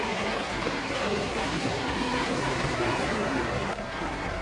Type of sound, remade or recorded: remade